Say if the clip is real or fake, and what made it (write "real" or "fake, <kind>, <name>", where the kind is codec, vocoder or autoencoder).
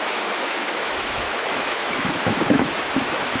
fake, autoencoder, DAC-VAE